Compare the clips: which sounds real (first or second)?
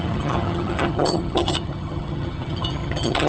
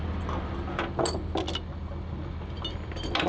second